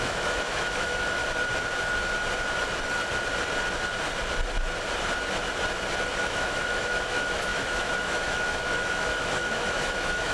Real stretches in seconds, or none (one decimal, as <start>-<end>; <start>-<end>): 1.2-6.2